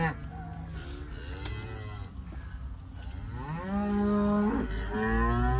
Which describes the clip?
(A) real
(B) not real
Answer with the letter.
A